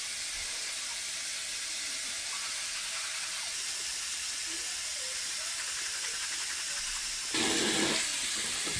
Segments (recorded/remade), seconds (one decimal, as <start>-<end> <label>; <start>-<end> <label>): 0.0-8.8 recorded